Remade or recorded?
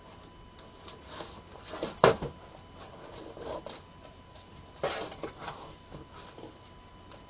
recorded